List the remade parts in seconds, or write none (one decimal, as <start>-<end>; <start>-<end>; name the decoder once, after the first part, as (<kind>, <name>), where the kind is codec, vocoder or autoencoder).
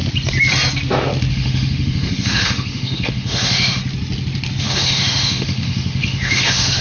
1.3-3.8 (autoencoder, DAC-VAE); 4.6-6.8